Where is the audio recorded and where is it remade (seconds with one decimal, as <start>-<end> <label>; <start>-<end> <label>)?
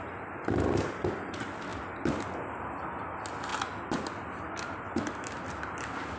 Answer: 0.0-6.2 recorded